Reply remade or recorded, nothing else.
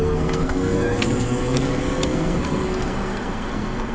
remade